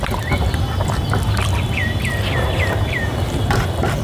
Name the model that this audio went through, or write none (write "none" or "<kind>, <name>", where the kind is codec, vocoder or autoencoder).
vocoder, BigVGAN v2